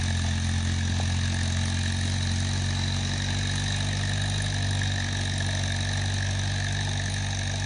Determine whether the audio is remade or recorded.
recorded